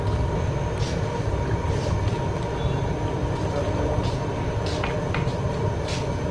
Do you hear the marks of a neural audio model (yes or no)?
no